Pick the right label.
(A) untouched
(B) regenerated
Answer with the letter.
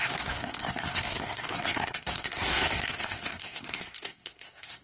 B